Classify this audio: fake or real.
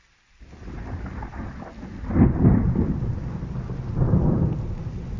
real